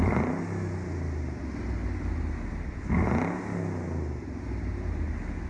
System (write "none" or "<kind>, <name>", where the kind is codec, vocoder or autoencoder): none